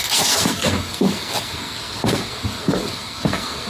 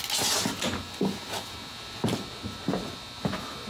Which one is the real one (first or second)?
second